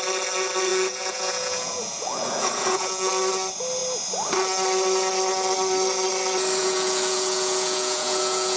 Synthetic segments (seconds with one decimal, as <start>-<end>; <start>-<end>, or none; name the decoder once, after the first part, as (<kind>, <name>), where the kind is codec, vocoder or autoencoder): 0.7-3.1 (vocoder, Vocos); 6.6-8.6